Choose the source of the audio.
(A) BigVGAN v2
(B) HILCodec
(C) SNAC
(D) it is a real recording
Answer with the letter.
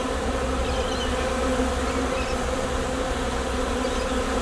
D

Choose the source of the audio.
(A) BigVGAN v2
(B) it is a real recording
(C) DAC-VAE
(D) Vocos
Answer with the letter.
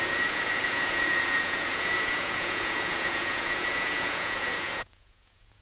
D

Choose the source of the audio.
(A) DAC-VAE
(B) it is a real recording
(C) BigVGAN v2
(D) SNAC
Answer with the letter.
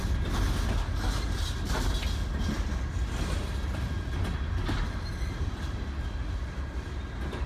B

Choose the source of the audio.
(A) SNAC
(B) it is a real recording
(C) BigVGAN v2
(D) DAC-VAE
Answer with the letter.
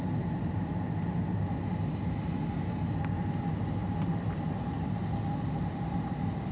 B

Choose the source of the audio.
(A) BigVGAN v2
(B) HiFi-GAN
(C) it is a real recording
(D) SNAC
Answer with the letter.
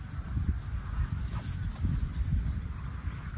C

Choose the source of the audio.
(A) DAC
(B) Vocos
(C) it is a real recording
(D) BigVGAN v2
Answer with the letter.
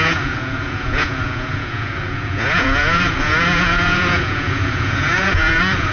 B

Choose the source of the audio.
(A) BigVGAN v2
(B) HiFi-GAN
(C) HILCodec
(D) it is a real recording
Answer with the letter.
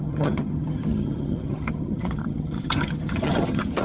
B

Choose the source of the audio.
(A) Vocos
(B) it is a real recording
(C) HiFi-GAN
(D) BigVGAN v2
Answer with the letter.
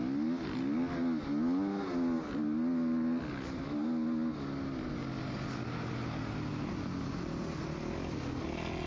B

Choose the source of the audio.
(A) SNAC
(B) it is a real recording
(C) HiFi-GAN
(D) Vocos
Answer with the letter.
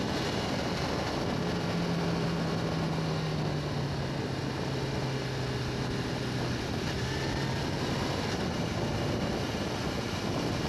B